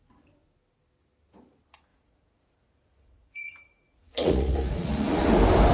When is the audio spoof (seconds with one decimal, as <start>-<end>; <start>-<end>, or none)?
1.9-5.3